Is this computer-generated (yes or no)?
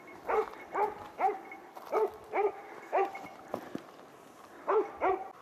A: no